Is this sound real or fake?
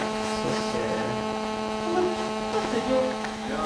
fake